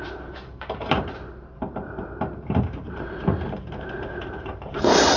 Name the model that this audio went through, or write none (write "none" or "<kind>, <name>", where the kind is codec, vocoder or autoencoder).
vocoder, BigVGAN v2